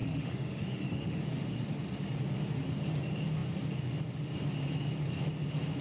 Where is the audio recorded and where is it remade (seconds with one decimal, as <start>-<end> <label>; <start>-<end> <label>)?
0.0-1.2 remade; 1.2-5.8 recorded